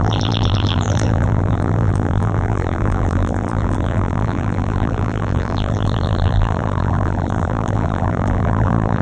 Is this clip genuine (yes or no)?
no